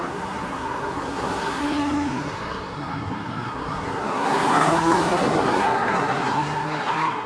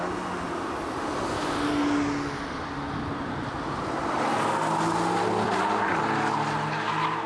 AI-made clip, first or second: first